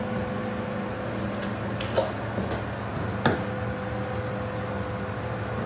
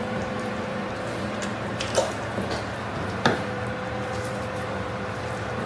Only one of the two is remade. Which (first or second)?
second